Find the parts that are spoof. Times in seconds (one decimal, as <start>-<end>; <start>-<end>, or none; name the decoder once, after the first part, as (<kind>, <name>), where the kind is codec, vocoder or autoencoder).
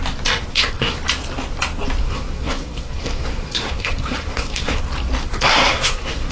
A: 0.5-1.0 (codec, SNAC); 2.0-4.8; 5.2-6.3